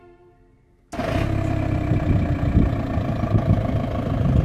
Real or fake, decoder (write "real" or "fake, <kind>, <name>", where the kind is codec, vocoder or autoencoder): real